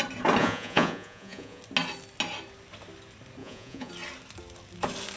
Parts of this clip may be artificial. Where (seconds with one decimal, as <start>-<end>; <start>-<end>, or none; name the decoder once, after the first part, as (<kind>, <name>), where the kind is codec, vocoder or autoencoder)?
0.4-1.6 (vocoder, Vocos); 3.4-3.9

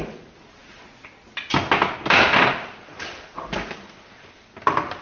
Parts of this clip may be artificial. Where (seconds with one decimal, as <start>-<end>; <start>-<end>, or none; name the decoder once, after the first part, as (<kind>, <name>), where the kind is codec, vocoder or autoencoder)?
none

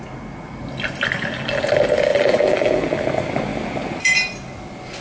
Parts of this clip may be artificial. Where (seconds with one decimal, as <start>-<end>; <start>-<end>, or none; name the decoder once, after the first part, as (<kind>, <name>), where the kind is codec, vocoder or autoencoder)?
2.1-2.8 (vocoder, BigVGAN v2)

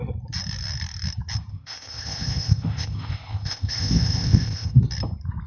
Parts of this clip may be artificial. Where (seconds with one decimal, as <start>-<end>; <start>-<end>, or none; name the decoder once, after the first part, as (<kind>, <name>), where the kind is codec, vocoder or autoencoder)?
1.5-4.8 (codec, ZipCodec)

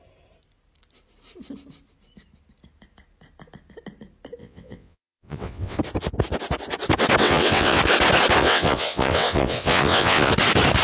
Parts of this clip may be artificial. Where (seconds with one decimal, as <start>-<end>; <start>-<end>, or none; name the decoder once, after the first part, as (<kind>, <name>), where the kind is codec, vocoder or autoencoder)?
4.4-5.8 (vocoder, WaveNeXt); 7.2-7.8; 8.4-10.3

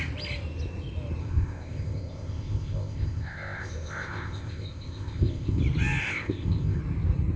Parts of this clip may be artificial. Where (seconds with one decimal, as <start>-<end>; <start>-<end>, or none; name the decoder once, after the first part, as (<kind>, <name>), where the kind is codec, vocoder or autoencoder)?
1.2-5.6 (codec, ZipCodec); 6.0-6.8

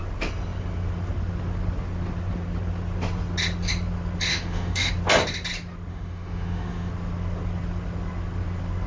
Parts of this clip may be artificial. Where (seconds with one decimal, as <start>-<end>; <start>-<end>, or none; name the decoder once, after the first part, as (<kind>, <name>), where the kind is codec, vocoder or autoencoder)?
4.3-4.9 (autoencoder, DAC-VAE); 5.9-6.9

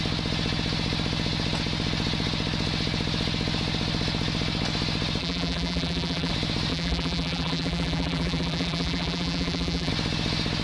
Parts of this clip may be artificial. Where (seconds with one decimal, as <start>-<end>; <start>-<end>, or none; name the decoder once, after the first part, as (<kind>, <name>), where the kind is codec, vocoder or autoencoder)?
5.2-6.3 (vocoder, BigVGAN v2); 6.7-9.9